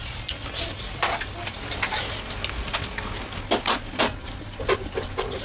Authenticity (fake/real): real